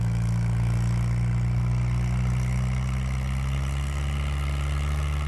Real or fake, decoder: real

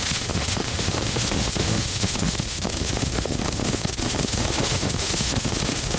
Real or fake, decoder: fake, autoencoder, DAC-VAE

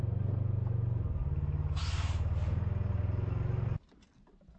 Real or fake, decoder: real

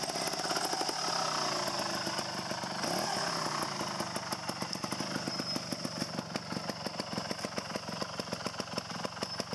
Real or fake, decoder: real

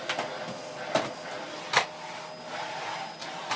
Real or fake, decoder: real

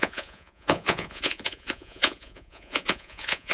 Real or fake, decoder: fake, vocoder, Vocos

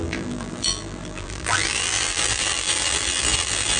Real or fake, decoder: fake, vocoder, BigVGAN v2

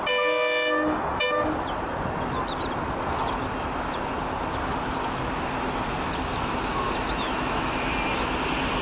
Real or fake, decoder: real